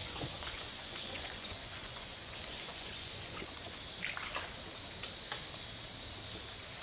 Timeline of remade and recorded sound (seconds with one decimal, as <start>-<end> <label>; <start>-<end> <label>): 0.0-3.8 remade; 3.8-6.8 recorded